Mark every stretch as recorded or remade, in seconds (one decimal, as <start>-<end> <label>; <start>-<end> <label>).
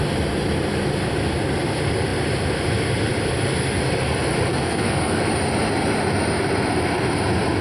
0.0-4.5 recorded; 4.5-5.2 remade; 5.2-7.6 recorded